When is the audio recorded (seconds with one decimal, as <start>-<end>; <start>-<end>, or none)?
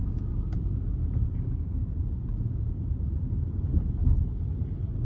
3.0-5.0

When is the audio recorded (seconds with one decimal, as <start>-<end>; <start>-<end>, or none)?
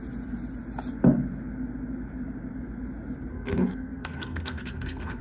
0.0-3.3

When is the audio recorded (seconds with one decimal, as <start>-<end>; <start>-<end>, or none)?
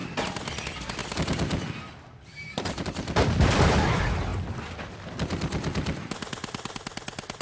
1.0-1.9